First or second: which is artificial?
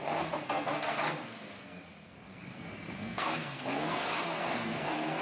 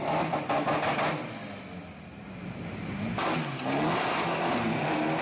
first